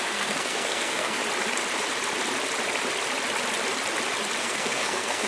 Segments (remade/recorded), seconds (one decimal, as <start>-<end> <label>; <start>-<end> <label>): 0.0-1.2 remade; 1.2-4.4 recorded; 4.4-5.3 remade